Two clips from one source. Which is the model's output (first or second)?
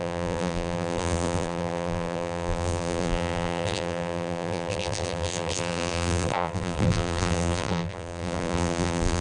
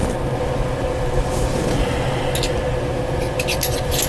first